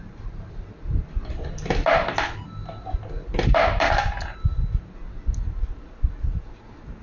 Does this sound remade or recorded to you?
recorded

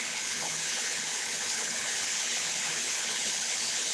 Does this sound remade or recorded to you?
remade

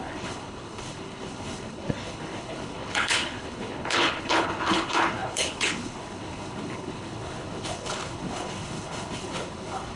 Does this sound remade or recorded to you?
remade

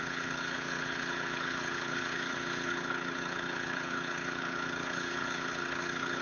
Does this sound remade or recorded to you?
remade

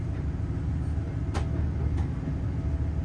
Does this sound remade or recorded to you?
recorded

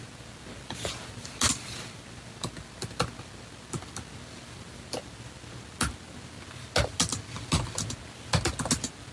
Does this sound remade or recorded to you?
recorded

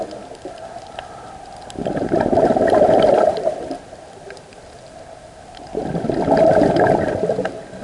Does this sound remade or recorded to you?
recorded